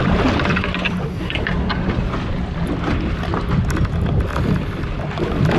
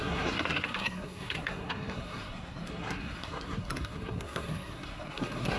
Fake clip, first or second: second